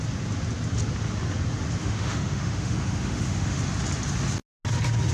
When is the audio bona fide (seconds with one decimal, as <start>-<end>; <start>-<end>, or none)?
0.0-1.8; 3.6-5.1